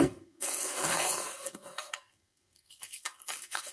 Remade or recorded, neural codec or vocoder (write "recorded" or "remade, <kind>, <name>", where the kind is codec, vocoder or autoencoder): remade, codec, SNAC